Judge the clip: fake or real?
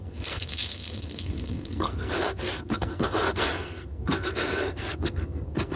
fake